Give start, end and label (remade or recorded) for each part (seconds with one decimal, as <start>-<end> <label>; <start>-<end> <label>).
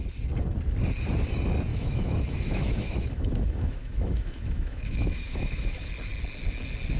0.0-1.7 recorded; 1.7-5.9 remade; 5.9-7.0 recorded